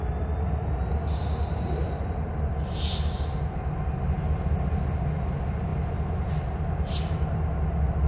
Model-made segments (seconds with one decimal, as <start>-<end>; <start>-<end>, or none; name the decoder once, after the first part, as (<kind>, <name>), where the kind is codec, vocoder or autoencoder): none